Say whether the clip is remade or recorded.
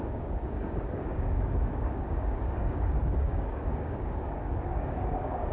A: remade